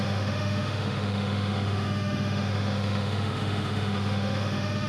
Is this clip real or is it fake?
fake